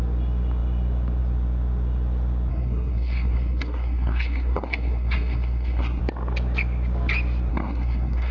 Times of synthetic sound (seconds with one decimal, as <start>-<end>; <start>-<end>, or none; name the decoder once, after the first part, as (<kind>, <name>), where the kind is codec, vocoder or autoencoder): 2.5-6.0 (codec, SNAC); 7.5-8.3